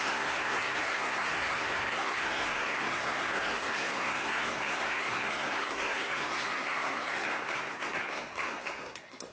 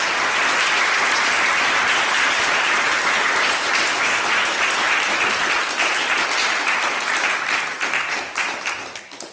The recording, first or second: second